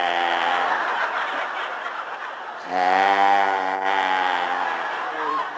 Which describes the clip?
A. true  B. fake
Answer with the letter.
A